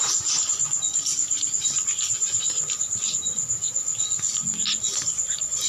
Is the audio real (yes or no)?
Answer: yes